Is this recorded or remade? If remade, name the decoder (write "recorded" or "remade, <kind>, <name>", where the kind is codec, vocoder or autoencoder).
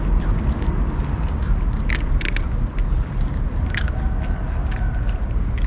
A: recorded